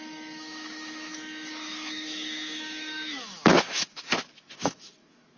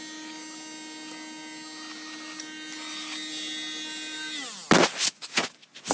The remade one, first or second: first